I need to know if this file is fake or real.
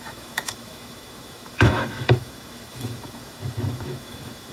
fake